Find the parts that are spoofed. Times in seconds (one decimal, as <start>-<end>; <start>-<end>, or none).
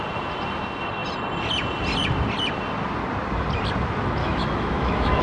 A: 4.2-5.2